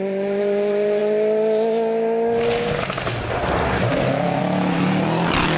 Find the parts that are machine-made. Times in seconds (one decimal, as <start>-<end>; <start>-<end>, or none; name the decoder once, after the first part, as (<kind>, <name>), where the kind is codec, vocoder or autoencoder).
none